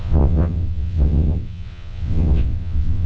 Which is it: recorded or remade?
remade